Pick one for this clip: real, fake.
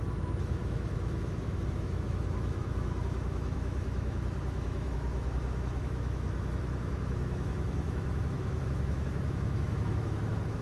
fake